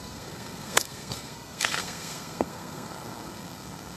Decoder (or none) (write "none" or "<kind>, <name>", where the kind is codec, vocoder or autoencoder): codec, SNAC